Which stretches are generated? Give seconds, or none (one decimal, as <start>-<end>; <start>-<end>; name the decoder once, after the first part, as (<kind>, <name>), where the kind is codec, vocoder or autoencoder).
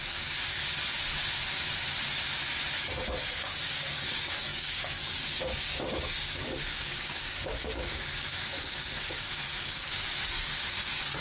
0.0-0.6 (codec, DAC); 2.8-11.2